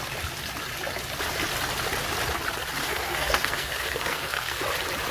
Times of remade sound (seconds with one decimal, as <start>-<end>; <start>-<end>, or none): 2.8-4.6